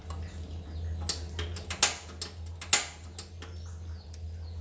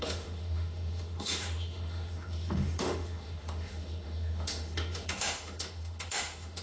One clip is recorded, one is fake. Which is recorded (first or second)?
first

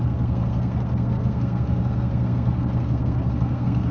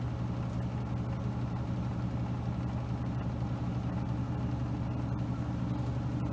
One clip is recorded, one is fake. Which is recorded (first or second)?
second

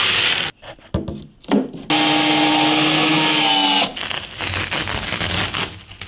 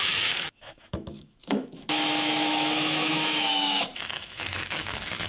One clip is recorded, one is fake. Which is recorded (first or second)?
first